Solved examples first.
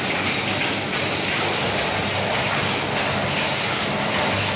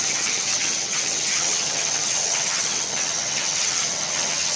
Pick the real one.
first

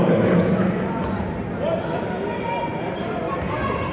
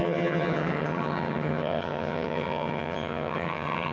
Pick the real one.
first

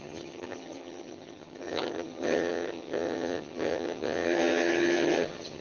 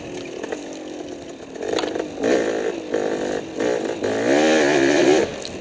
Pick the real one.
second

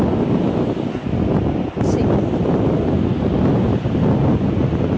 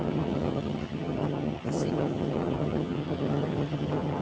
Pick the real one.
first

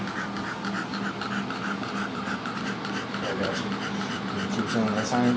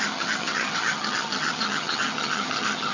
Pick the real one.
first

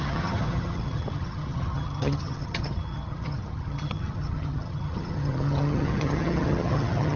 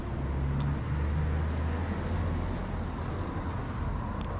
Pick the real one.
second